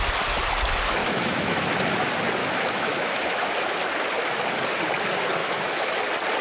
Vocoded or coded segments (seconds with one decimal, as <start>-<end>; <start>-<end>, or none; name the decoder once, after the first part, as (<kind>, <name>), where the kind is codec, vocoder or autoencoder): 1.0-1.6 (autoencoder, DAC-VAE); 2.4-3.5; 5.4-6.0